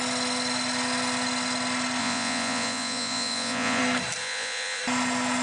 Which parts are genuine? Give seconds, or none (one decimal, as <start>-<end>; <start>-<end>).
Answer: 0.0-2.0; 3.8-4.2; 4.8-5.4